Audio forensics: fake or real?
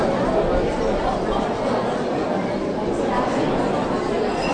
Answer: real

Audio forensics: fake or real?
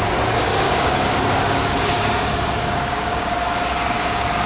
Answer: fake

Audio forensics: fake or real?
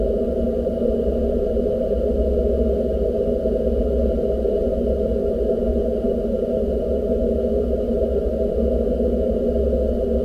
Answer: real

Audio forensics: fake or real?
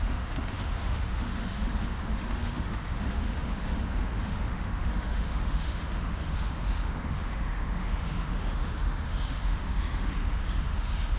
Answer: fake